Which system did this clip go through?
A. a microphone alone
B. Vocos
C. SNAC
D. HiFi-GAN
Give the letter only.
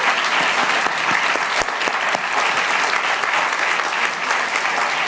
A